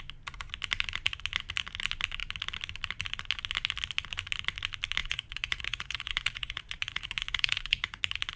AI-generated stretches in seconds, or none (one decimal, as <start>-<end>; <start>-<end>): 5.0-8.0